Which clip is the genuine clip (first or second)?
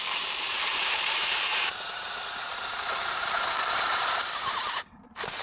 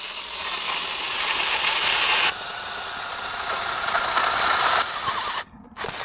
second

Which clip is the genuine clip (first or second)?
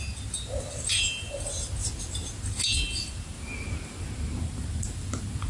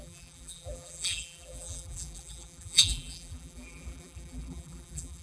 first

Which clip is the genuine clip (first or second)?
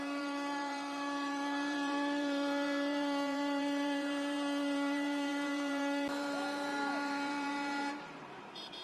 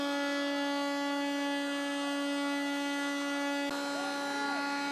second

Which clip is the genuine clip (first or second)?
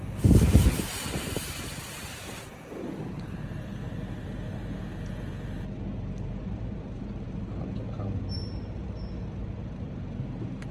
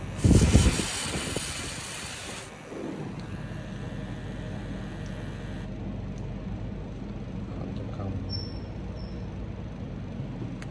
second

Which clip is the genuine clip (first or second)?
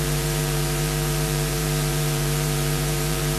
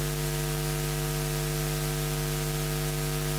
second